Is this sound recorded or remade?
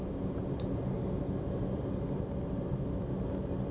recorded